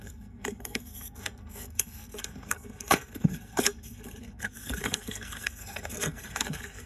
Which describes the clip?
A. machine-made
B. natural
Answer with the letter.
A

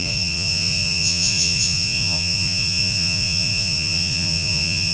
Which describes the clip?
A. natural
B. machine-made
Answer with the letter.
B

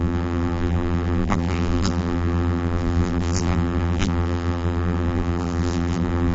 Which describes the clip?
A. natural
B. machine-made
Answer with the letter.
B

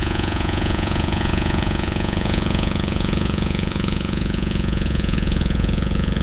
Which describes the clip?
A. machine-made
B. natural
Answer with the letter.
A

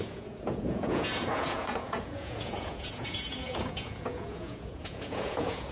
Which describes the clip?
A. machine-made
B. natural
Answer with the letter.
A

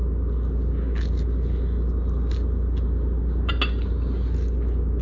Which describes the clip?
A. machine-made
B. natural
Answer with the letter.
B